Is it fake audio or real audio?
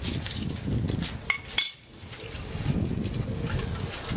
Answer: real